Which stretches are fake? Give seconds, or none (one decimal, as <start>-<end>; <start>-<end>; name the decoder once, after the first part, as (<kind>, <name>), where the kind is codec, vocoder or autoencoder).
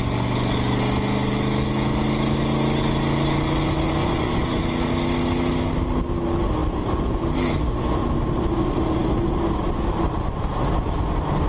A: 4.0-4.6 (vocoder, Vocos)